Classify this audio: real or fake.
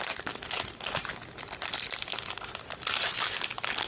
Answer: real